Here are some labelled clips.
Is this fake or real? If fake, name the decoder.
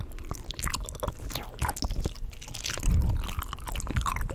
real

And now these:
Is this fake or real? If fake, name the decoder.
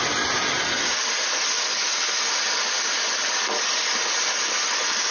fake, vocoder, BigVGAN v2